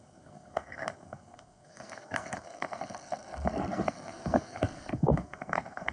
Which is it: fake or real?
fake